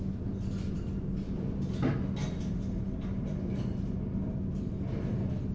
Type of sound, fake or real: real